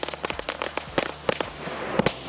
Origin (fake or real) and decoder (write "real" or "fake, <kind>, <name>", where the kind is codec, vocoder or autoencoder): real